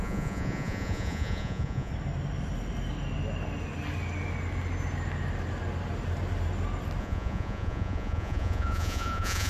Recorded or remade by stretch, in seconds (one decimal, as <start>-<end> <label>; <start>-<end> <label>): 0.0-1.9 remade; 1.9-7.0 recorded; 7.0-9.5 remade